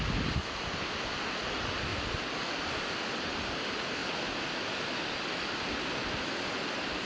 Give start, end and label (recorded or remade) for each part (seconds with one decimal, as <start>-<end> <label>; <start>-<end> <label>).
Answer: 0.0-7.1 recorded